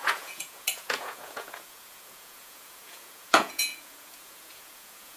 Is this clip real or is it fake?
fake